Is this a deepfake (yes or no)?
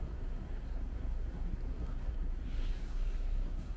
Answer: yes